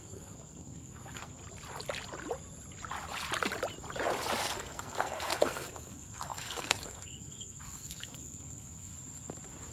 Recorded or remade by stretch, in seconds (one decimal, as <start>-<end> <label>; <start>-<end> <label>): 0.0-1.4 remade; 1.4-4.4 recorded; 4.4-8.9 remade; 8.9-9.7 recorded

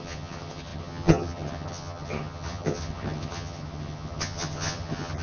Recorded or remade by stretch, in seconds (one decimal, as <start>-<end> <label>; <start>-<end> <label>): 0.0-5.2 remade

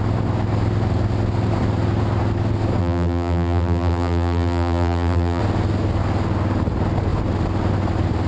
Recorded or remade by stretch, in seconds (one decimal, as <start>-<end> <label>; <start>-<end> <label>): 0.0-2.8 recorded; 2.8-5.4 remade; 5.4-8.3 recorded